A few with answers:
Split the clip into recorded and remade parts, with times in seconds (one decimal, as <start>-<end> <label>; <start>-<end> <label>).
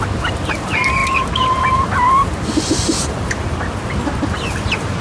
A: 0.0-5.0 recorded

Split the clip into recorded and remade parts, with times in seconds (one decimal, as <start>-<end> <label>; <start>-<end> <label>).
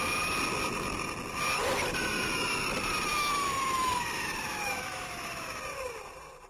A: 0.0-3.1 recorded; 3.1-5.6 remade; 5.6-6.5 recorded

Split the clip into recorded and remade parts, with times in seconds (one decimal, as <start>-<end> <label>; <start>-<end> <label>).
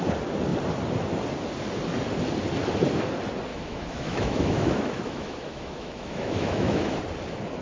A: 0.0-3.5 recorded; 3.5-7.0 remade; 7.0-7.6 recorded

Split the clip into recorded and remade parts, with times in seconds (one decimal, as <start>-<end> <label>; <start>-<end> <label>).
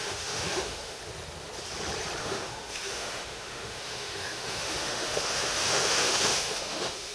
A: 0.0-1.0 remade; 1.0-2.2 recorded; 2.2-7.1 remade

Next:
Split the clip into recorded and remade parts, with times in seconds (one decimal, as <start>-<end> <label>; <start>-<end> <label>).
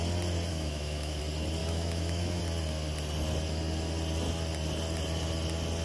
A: 0.0-0.5 recorded; 0.5-1.2 remade; 1.2-1.6 recorded; 1.6-2.4 remade; 2.4-5.8 recorded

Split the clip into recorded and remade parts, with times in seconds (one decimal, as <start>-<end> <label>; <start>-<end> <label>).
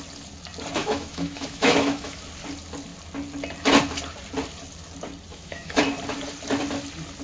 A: 0.0-0.8 recorded; 0.8-2.2 remade; 2.2-5.3 recorded; 5.3-5.8 remade; 5.8-7.2 recorded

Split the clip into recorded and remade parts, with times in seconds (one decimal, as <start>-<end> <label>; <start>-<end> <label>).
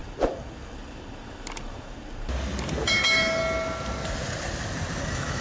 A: 0.0-2.9 recorded; 2.9-3.4 remade; 3.4-5.0 recorded; 5.0-5.4 remade